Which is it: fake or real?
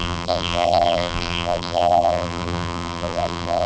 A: fake